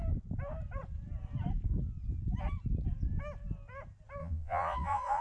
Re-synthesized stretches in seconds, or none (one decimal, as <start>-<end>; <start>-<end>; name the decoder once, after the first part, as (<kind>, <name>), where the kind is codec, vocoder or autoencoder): 4.2-5.2 (vocoder, Vocos)